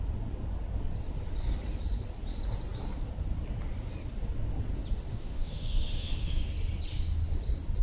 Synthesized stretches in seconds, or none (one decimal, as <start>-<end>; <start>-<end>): 5.1-6.5